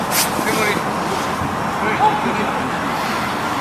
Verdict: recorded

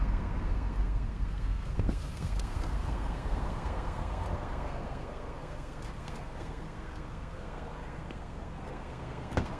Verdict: remade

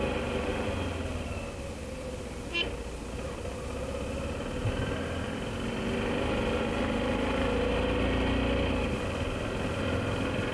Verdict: recorded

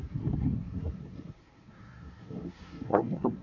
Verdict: remade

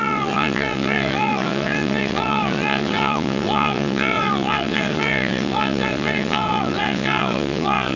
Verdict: remade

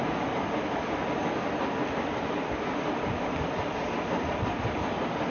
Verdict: recorded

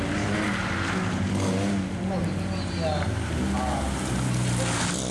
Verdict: recorded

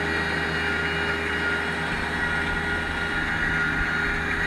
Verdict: recorded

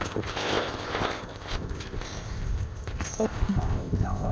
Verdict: remade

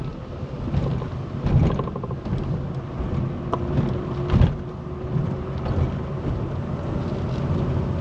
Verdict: recorded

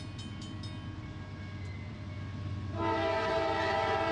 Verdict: recorded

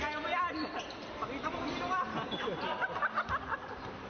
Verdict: recorded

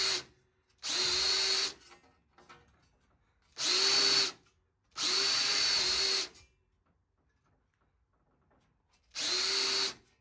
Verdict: recorded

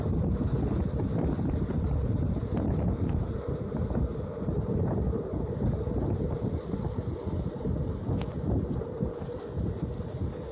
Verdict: recorded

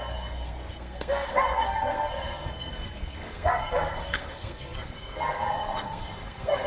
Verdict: remade